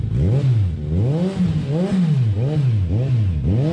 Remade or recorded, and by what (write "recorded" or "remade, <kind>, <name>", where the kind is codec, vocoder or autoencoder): recorded